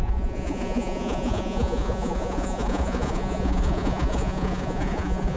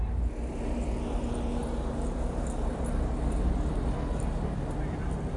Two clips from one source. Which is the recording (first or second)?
second